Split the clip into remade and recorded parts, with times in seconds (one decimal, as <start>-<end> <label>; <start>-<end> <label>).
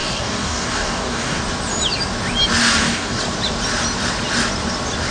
0.0-1.4 remade; 1.4-2.6 recorded; 2.6-3.2 remade; 3.2-5.1 recorded